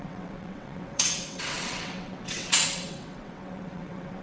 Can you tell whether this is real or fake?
fake